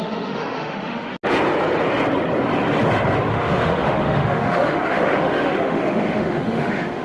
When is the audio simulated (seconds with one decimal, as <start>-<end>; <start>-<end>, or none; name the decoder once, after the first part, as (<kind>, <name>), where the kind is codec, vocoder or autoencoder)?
0.0-1.1 (autoencoder, DAC-VAE); 3.3-7.0